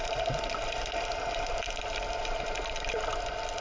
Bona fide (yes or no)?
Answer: yes